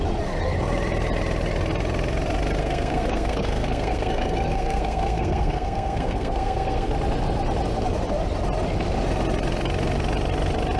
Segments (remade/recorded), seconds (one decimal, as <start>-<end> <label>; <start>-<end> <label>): 0.0-2.6 recorded; 2.6-6.9 remade; 6.9-10.8 recorded